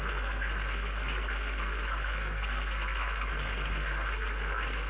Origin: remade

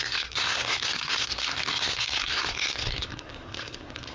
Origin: remade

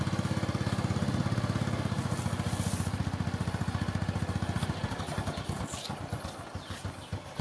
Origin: recorded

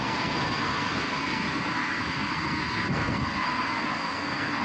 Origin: remade